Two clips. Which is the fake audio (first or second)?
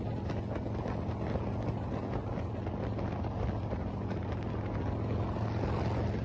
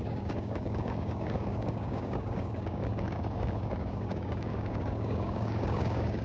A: second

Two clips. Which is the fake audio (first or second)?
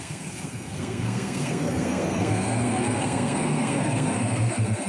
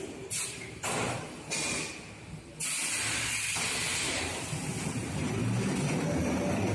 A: first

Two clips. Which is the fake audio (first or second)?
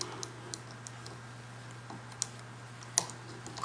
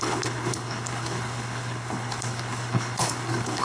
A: second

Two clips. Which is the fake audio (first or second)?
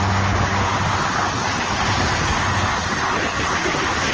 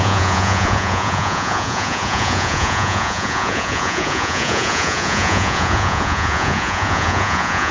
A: second